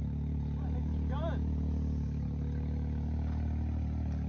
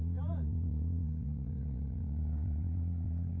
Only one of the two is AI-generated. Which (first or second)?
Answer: second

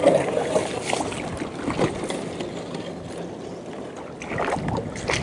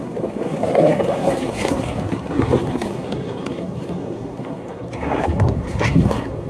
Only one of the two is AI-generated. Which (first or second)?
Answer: second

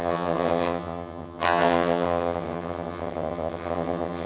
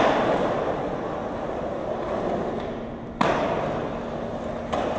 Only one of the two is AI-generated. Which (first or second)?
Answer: first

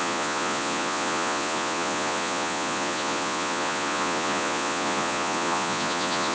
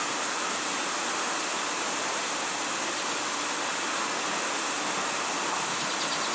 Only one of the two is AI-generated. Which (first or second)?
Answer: first